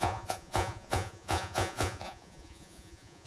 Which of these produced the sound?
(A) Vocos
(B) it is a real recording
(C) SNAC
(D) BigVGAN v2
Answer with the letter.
A